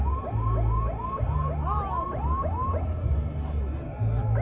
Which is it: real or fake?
real